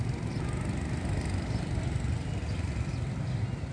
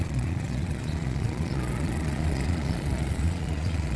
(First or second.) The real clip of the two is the first